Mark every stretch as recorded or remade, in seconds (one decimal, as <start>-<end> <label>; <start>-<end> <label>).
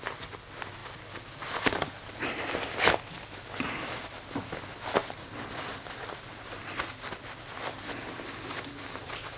0.0-9.4 recorded